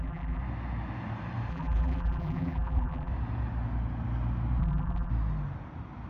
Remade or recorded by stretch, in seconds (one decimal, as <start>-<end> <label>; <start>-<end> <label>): 0.0-0.4 remade; 0.4-1.5 recorded; 1.5-3.1 remade; 3.1-4.6 recorded; 4.6-5.1 remade; 5.1-6.1 recorded

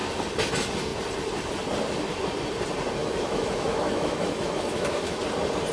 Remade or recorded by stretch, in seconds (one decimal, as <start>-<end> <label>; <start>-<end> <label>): 0.0-3.0 recorded; 3.0-5.2 remade; 5.2-5.7 recorded

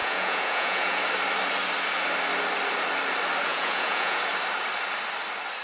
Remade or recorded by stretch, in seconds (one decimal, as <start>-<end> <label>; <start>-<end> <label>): 0.0-1.0 remade; 1.0-3.5 recorded; 3.5-4.2 remade; 4.2-5.6 recorded

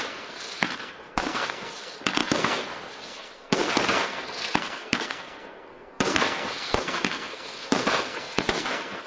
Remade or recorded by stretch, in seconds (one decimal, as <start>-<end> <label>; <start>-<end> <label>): 0.0-9.1 remade

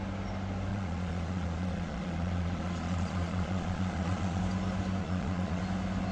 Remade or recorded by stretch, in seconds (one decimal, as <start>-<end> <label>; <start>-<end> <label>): 0.0-0.7 recorded; 0.7-4.4 remade; 4.4-5.0 recorded; 5.0-5.6 remade; 5.6-6.1 recorded

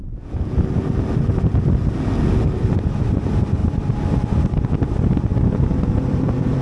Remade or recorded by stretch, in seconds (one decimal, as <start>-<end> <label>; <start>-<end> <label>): 0.0-5.3 recorded; 5.3-6.6 remade

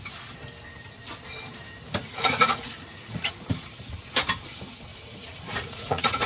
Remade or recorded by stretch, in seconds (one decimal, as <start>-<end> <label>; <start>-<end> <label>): 0.0-2.0 recorded; 2.0-3.3 remade; 3.3-4.9 recorded; 4.9-6.3 remade

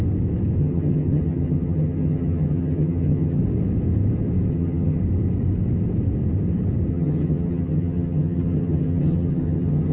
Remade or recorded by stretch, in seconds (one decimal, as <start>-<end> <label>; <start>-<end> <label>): 0.0-0.6 recorded; 0.6-3.4 remade; 3.4-4.5 recorded; 4.5-5.0 remade; 5.0-6.9 recorded; 6.9-9.9 remade